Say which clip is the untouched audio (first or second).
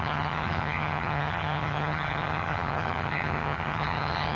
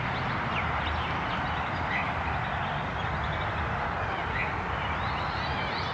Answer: second